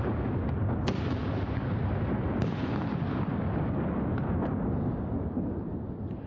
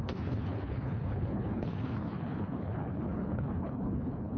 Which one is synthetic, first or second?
second